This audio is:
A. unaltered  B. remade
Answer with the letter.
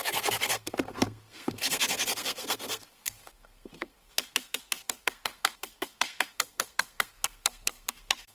B